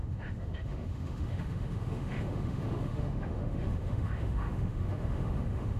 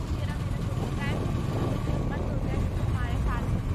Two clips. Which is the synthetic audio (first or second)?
first